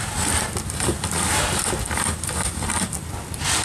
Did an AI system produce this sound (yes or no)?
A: no